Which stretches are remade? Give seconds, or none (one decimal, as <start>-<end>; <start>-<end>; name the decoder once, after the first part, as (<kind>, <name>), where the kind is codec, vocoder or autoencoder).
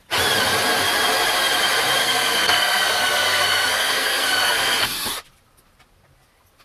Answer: 2.0-5.1 (codec, SNAC)